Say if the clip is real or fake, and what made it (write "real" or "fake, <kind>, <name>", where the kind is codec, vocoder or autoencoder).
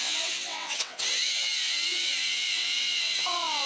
fake, vocoder, WaveNeXt